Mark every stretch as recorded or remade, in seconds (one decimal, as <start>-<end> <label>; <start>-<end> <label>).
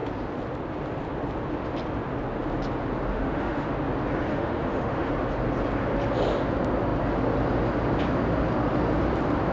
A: 0.0-3.1 recorded; 3.1-3.7 remade; 3.7-4.3 recorded; 4.3-5.1 remade; 5.1-9.5 recorded